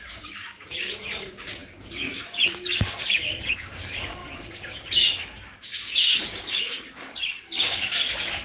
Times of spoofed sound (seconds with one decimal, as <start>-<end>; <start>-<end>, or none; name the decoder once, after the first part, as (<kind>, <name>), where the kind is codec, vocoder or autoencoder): 0.0-8.4 (codec, DAC)